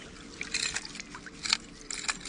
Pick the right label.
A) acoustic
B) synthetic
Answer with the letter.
B